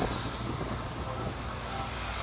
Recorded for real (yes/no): yes